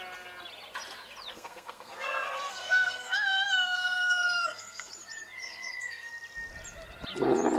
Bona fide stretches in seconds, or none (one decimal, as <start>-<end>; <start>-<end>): 0.0-1.3; 4.9-5.4; 6.1-7.6